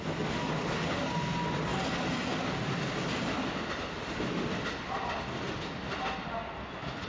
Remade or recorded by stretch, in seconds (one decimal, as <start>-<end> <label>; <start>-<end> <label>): 0.0-7.1 recorded